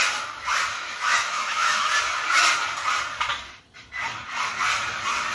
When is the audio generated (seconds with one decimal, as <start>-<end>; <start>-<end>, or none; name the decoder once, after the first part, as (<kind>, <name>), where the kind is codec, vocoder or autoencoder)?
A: 0.7-1.9 (autoencoder, DAC-VAE)